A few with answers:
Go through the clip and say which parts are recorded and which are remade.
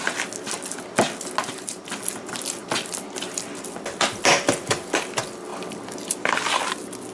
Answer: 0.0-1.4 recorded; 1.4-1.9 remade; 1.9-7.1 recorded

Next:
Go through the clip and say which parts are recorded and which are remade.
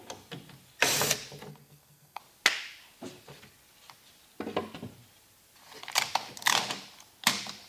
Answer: 0.0-1.5 recorded; 1.5-2.2 remade; 2.2-7.7 recorded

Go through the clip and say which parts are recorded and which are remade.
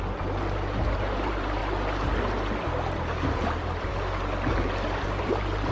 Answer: 0.0-1.6 remade; 1.6-2.9 recorded; 2.9-3.9 remade; 3.9-5.2 recorded; 5.2-5.7 remade